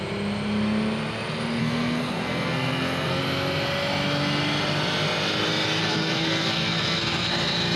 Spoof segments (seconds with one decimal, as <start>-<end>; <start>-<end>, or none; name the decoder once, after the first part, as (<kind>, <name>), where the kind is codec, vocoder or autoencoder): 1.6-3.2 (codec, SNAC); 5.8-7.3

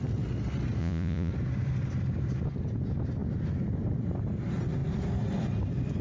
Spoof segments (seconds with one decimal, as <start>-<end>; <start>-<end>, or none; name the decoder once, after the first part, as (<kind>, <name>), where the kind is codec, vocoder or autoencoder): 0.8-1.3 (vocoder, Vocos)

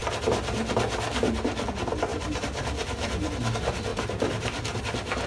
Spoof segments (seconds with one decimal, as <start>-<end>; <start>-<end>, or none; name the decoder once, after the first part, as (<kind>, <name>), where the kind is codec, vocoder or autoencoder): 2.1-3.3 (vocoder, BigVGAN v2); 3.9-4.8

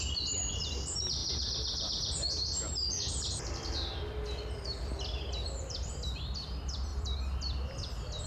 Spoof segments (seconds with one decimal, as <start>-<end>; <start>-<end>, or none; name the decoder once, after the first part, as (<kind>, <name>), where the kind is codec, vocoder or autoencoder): 0.0-8.3 (vocoder, BigVGAN v2)

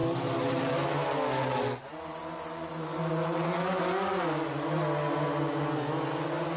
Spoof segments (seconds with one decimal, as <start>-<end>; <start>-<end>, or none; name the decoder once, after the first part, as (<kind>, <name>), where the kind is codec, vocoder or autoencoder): none

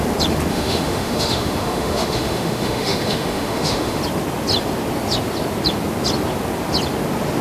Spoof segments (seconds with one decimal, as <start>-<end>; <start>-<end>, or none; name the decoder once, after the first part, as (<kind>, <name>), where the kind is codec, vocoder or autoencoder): 0.5-4.0 (autoencoder, DAC-VAE)